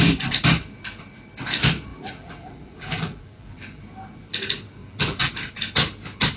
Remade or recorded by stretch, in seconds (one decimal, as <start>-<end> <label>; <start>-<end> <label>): 0.0-1.9 recorded; 1.9-3.8 remade; 3.8-4.8 recorded; 4.8-5.3 remade; 5.3-6.4 recorded